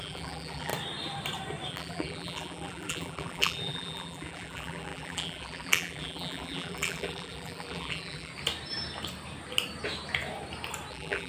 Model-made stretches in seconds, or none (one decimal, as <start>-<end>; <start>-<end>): 0.0-0.7; 1.7-8.3; 10.9-11.3